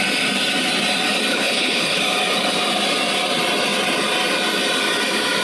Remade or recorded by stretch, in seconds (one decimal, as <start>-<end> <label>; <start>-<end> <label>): 0.0-1.3 recorded; 1.3-2.0 remade; 2.0-5.4 recorded